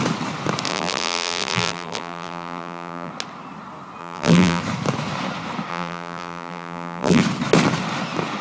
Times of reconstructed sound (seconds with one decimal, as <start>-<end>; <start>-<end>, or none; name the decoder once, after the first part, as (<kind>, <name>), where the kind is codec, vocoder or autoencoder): 0.7-3.1 (vocoder, BigVGAN v2); 4.0-4.6; 5.7-7.2